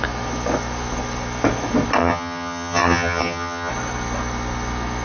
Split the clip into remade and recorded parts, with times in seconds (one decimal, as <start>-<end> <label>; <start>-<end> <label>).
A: 0.0-2.0 recorded; 2.0-3.7 remade; 3.7-5.0 recorded